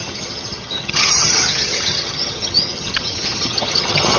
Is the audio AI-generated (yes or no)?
yes